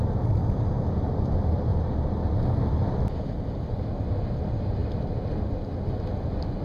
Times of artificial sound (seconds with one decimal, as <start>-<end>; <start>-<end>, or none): 0.4-1.1; 1.7-3.1